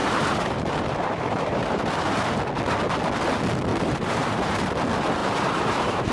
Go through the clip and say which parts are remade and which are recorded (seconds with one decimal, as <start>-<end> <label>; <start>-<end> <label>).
0.0-2.4 remade; 2.4-3.7 recorded; 3.7-4.8 remade; 4.8-5.2 recorded; 5.2-6.1 remade